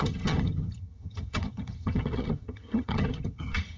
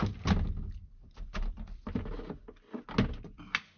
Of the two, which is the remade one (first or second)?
first